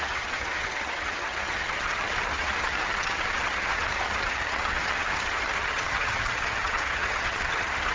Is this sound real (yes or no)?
no